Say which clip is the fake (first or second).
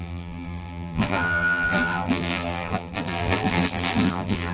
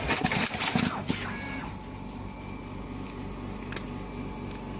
first